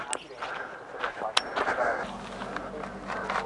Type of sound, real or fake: real